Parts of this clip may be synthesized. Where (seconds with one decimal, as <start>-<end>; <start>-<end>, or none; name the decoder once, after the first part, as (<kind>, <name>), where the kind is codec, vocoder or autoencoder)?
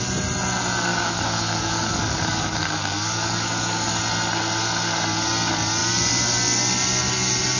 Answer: 0.9-4.0 (codec, DAC)